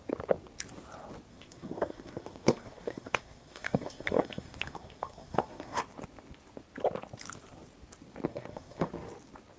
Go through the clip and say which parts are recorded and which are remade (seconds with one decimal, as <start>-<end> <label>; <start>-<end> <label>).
0.0-1.3 recorded; 1.3-5.8 remade; 5.8-8.3 recorded; 8.3-8.9 remade; 8.9-9.6 recorded